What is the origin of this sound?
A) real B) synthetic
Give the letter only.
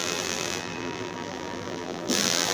B